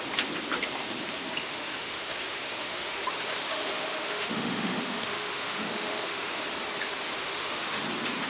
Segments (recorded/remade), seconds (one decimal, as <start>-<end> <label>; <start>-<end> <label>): 0.0-1.4 recorded; 1.4-6.4 remade; 6.4-7.2 recorded; 7.2-7.8 remade; 7.8-8.3 recorded